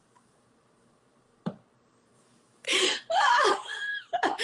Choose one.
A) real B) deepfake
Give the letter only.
B